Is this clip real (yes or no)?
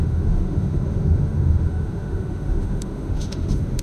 no